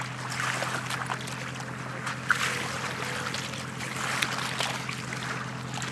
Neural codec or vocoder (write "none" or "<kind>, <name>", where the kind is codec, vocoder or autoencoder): none